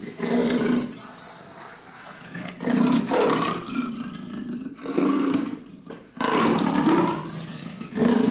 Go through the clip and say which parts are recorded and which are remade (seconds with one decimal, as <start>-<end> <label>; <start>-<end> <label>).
0.0-0.6 remade; 0.6-1.3 recorded; 1.3-2.5 remade; 2.5-4.9 recorded; 4.9-5.6 remade; 5.6-7.5 recorded; 7.5-8.3 remade